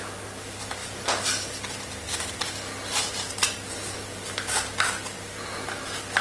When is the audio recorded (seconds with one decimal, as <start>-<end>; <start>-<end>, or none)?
0.0-6.2